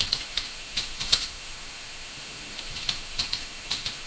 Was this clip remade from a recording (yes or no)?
yes